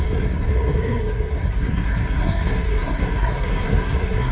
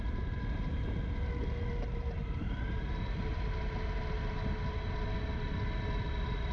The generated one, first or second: first